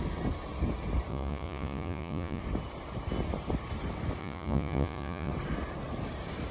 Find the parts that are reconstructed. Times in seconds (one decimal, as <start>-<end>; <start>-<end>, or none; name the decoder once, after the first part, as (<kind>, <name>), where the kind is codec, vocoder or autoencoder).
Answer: 1.1-2.4 (vocoder, Vocos); 4.2-5.3